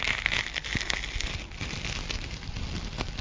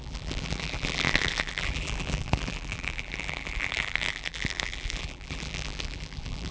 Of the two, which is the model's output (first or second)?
second